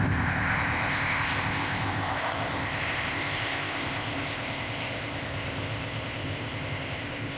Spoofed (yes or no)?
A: yes